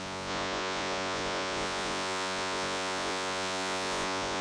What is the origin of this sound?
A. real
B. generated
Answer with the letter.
B